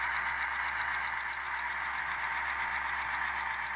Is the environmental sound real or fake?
real